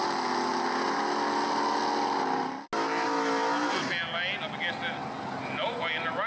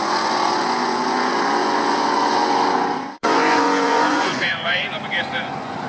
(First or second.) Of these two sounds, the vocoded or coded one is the second